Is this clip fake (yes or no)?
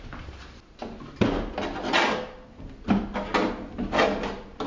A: no